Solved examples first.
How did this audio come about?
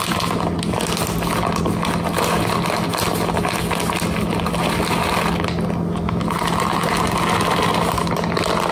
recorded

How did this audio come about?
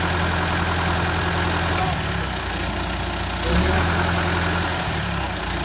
recorded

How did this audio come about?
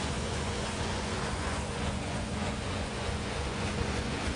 remade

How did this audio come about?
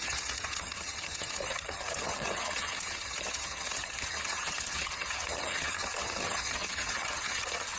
remade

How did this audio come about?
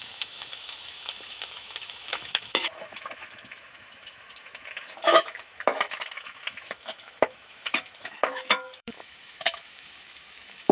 remade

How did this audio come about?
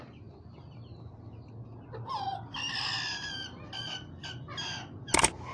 recorded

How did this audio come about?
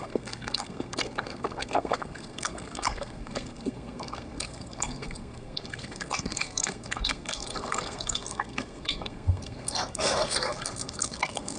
remade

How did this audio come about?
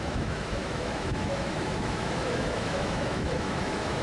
remade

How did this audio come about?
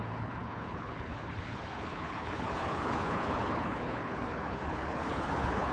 remade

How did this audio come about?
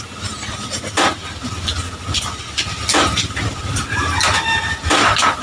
recorded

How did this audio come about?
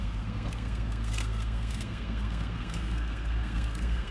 remade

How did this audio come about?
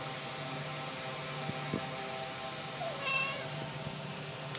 recorded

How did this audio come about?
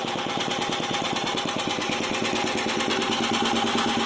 recorded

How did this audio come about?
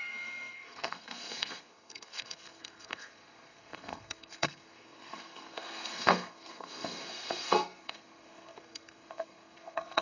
remade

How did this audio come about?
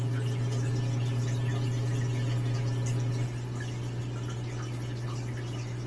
recorded